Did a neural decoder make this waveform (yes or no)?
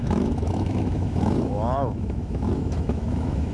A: yes